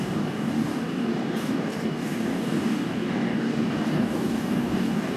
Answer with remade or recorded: remade